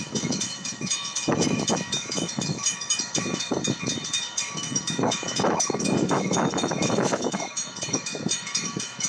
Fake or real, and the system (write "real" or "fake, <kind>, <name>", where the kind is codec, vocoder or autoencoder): fake, autoencoder, DAC-VAE